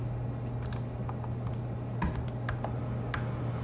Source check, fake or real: real